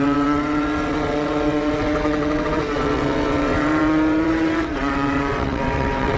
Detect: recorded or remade remade